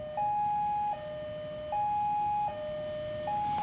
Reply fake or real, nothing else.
real